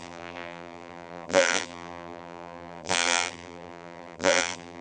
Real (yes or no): no